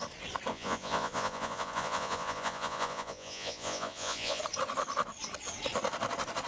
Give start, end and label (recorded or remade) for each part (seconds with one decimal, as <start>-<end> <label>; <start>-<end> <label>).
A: 0.0-0.5 recorded; 0.5-4.4 remade; 4.4-6.5 recorded